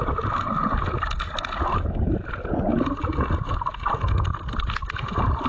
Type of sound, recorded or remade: recorded